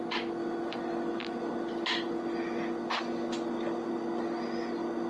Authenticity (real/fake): real